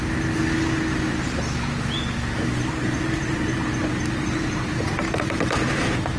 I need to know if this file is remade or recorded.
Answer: recorded